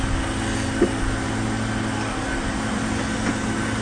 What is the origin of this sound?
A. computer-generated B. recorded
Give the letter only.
B